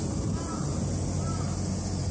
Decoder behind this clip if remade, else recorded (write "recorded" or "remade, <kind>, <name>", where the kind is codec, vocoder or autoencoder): recorded